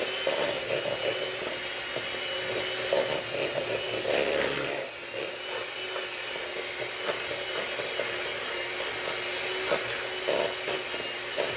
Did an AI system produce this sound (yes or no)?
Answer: no